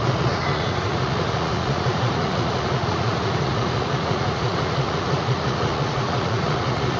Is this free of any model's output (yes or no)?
no